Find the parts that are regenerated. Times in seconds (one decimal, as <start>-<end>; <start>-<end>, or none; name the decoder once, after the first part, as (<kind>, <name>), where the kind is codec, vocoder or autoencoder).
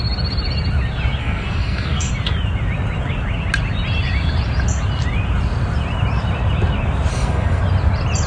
1.2-2.1 (codec, SNAC); 7.1-7.6